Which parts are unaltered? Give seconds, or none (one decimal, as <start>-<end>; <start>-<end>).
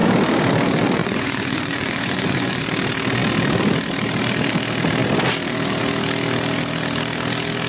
0.0-1.0; 2.6-7.7